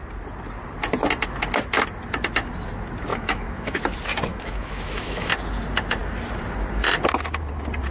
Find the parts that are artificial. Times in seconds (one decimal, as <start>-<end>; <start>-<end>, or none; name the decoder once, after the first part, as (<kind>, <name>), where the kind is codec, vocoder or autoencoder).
3.1-3.8 (autoencoder, DAC-VAE); 4.3-5.3